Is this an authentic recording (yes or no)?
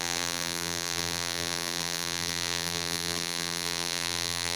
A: no